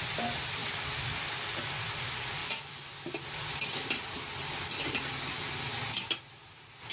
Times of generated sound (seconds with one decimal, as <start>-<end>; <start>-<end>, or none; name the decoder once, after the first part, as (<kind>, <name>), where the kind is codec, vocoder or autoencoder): none